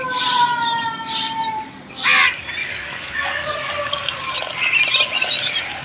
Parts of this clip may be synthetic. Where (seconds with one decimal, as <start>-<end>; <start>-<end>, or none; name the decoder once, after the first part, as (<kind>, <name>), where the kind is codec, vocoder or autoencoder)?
2.6-3.7 (codec, DAC)